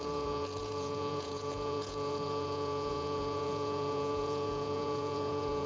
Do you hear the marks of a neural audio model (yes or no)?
yes